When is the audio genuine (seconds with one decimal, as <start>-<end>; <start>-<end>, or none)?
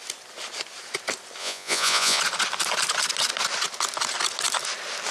0.0-1.4; 2.2-5.1